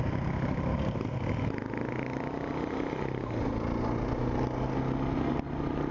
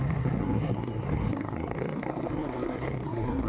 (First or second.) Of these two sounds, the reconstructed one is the second